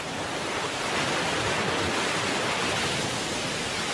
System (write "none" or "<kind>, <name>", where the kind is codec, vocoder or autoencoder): none